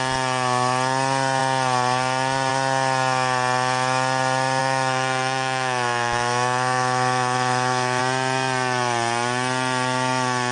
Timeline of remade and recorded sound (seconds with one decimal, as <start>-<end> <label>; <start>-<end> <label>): 0.0-4.6 recorded; 4.6-8.0 remade; 8.0-10.5 recorded